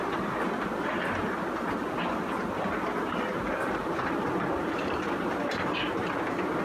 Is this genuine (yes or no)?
yes